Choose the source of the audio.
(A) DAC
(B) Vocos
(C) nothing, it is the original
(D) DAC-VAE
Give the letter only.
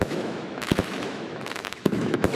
D